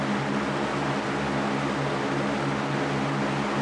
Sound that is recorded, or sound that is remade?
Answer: recorded